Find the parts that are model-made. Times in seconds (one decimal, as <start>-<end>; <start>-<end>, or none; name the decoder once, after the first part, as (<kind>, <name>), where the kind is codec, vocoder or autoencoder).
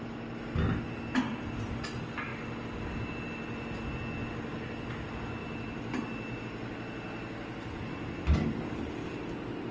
none